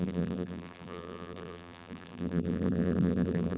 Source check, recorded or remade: remade